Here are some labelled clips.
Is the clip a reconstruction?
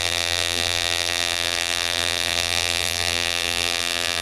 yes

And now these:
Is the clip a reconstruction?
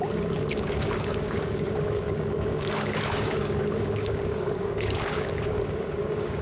yes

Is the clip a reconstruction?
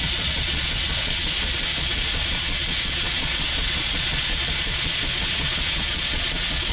yes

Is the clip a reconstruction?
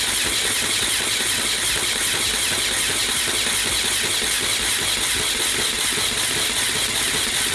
no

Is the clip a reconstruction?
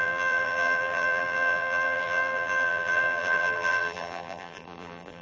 yes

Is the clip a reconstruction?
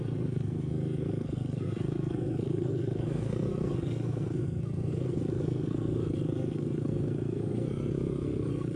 yes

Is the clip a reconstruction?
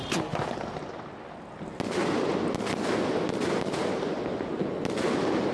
no